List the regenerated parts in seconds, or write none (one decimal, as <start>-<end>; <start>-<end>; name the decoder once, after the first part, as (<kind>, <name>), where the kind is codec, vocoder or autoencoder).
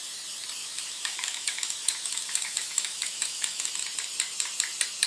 0.6-3.7 (autoencoder, DAC-VAE)